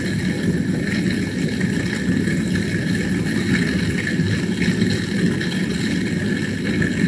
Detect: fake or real real